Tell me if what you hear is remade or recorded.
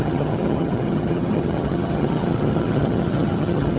remade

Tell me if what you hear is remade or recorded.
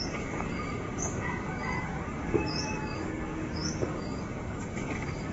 remade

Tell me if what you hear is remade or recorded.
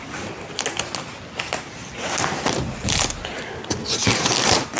recorded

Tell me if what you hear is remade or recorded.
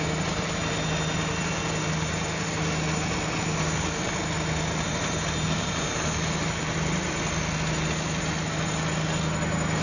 recorded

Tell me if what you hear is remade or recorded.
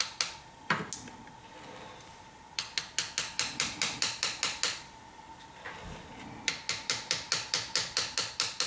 recorded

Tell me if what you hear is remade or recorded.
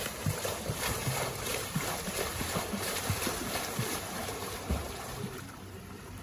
remade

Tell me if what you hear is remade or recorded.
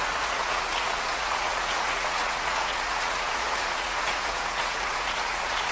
remade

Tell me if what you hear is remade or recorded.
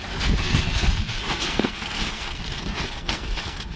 remade